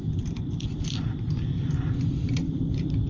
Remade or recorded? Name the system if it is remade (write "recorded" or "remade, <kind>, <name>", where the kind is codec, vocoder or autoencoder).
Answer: recorded